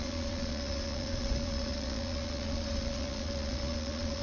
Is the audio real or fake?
fake